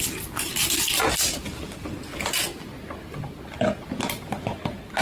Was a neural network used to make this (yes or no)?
no